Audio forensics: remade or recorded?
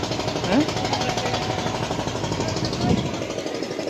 recorded